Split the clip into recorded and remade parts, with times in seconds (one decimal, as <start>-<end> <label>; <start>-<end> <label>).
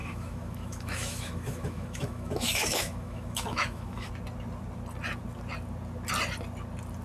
0.0-4.1 remade; 4.1-7.0 recorded